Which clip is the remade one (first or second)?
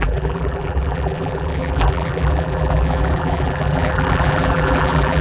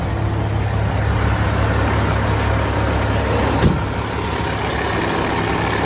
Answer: first